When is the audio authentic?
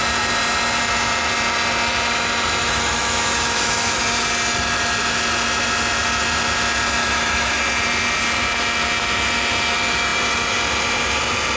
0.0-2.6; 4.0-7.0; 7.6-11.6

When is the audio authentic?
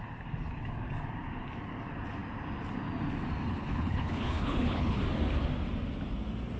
0.0-3.5; 5.0-6.6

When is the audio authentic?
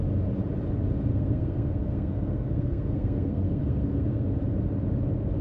0.0-1.1; 4.3-5.4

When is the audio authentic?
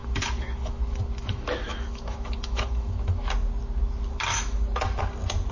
3.3-4.3; 5.0-5.5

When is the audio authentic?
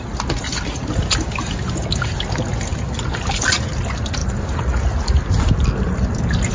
0.0-6.5